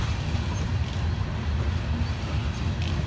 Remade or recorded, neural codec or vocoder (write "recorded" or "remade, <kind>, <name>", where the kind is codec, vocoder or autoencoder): recorded